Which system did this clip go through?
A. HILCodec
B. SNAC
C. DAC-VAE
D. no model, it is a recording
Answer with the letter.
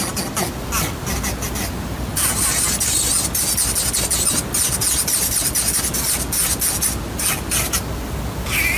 D